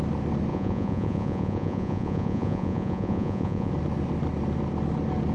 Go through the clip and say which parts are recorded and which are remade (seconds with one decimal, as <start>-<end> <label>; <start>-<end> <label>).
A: 0.0-0.5 recorded; 0.5-3.7 remade; 3.7-5.3 recorded